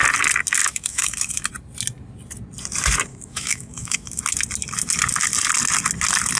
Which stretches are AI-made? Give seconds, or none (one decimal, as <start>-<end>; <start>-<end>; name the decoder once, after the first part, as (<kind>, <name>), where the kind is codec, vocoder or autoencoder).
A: 0.6-1.5 (autoencoder, DAC-VAE); 3.1-4.2

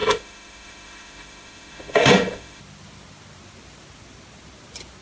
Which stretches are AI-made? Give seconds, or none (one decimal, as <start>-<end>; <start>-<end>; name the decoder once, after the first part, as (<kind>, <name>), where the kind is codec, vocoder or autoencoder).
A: 0.0-2.6 (autoencoder, DAC-VAE)

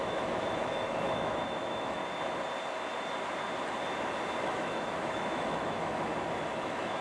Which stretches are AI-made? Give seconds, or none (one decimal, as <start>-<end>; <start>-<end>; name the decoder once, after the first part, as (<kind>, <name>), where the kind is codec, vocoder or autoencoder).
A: 0.0-2.0 (autoencoder, DAC-VAE); 4.4-6.1; 6.6-7.0

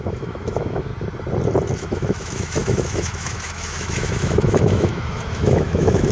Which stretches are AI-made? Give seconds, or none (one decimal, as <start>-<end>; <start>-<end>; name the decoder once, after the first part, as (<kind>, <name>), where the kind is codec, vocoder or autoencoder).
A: 0.0-0.9 (autoencoder, DAC-VAE); 1.7-6.1

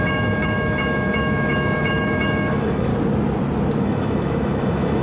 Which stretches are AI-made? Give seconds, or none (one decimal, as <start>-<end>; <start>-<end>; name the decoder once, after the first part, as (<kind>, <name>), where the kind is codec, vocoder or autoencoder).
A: 0.0-2.9 (autoencoder, DAC-VAE); 3.8-5.0

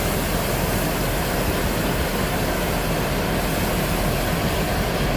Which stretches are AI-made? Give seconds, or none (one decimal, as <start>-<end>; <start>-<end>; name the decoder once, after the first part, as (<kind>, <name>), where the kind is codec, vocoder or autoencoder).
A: none